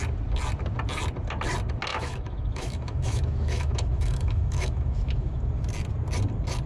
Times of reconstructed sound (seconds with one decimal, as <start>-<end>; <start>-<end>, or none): 1.9-5.4

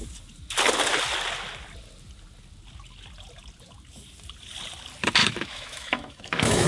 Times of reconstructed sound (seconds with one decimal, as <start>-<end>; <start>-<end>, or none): 5.2-6.7

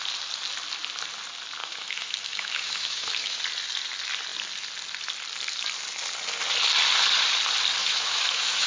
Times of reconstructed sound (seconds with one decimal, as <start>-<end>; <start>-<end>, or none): 1.6-3.4; 7.8-8.7

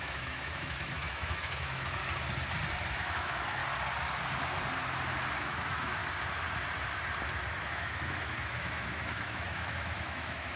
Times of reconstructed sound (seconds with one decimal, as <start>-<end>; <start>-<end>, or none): 0.0-2.0; 2.9-3.6; 5.3-6.0; 7.6-10.6

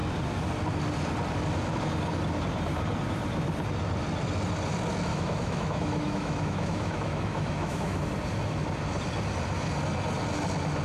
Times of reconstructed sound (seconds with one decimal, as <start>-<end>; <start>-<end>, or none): 5.1-8.0

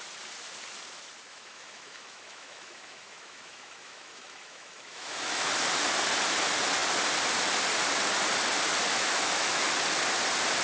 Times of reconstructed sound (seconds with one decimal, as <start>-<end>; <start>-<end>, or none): 1.3-5.5; 8.9-9.6

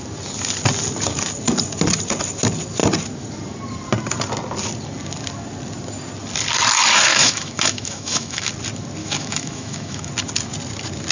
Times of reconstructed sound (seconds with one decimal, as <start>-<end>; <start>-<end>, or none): 7.1-8.5; 9.0-10.1

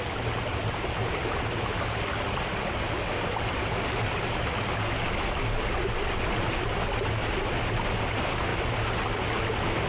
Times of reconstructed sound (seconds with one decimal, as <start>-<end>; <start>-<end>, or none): none